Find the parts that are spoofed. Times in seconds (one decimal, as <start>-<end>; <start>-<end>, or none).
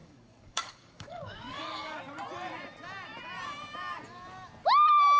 0.0-2.0